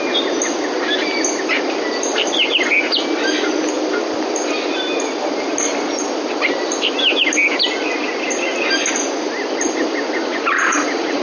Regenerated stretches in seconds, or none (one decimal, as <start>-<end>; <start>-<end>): 10.2-11.2